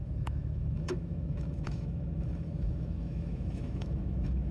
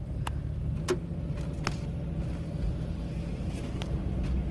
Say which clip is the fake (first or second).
first